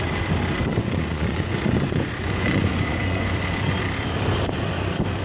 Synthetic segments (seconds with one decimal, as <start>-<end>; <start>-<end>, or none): 0.7-3.8